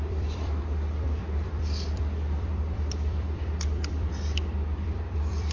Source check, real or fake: fake